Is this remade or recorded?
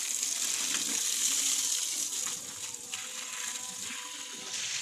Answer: recorded